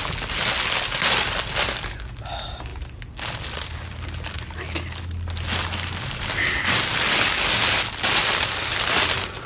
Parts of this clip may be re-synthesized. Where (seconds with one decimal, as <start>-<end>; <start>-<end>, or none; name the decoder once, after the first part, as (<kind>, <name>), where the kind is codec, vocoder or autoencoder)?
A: none